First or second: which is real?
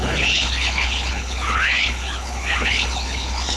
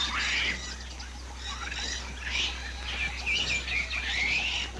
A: second